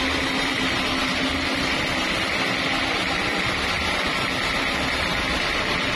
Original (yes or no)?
yes